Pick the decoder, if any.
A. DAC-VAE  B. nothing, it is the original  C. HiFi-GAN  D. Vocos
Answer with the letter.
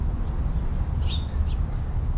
B